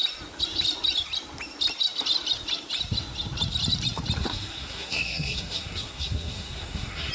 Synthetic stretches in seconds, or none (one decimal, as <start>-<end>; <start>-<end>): 4.2-7.1